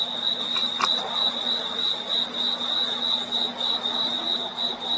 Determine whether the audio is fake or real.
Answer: real